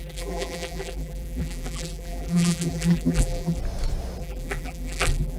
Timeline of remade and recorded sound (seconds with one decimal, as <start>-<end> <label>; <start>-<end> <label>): 0.0-3.6 remade; 3.6-4.2 recorded; 4.2-5.4 remade